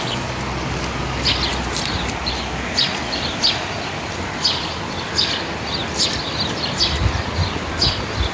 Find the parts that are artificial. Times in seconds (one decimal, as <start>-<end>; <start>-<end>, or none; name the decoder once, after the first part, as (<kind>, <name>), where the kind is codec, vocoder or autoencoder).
none